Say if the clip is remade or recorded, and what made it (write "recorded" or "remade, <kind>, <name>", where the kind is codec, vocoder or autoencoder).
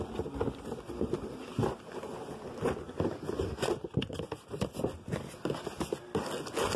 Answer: recorded